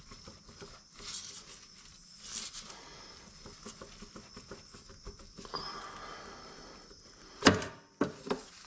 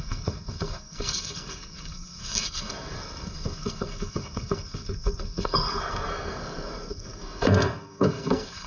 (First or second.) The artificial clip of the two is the second